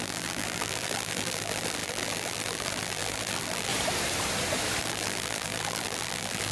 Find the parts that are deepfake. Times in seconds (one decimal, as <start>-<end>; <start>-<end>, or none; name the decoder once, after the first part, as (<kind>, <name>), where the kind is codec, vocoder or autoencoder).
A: 0.0-3.7 (vocoder, BigVGAN v2); 4.8-6.5